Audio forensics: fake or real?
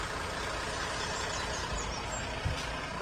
real